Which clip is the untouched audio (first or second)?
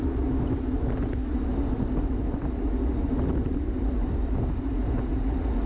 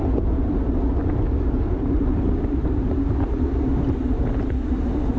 first